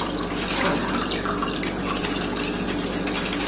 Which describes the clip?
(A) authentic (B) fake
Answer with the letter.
A